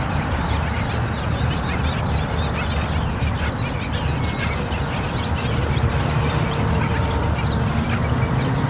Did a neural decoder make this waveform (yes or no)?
no